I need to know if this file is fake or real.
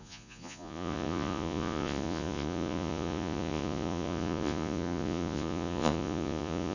fake